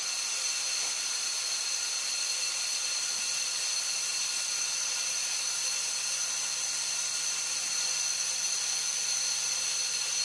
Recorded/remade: recorded